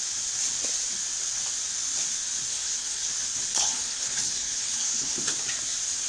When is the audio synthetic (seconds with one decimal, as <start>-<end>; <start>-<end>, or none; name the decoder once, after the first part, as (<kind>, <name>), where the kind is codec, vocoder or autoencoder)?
2.5-3.1 (codec, HILCodec); 3.5-5.1